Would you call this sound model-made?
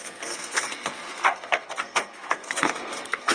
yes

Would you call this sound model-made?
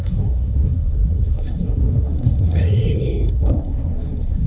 yes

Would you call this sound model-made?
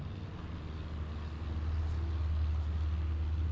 no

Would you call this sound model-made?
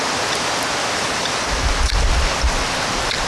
no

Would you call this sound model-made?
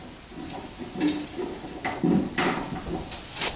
no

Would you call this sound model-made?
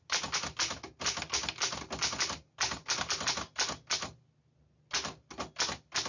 no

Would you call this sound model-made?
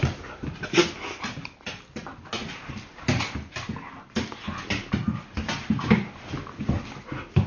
no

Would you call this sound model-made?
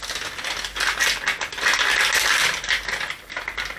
no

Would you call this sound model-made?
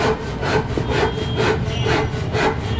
no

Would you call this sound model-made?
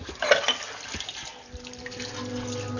no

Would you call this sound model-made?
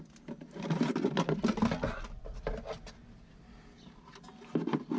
no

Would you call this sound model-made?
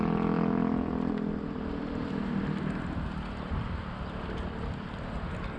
no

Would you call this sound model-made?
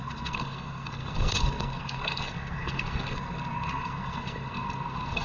yes